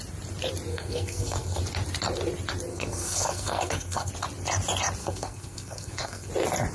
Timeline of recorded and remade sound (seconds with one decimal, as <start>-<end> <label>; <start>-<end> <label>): 0.0-0.7 recorded; 0.7-1.6 remade; 1.6-2.7 recorded; 2.7-4.1 remade; 4.1-5.0 recorded; 5.0-6.3 remade; 6.3-6.7 recorded